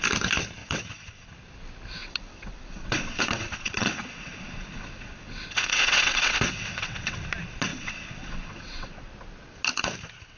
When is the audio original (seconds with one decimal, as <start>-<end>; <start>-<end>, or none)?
0.0-0.6; 1.3-2.0; 7.2-7.7; 9.1-10.4